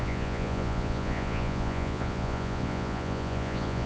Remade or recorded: remade